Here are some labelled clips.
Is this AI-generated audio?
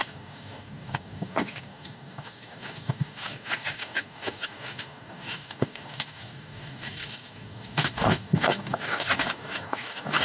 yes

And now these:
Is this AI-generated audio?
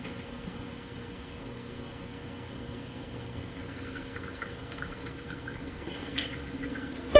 yes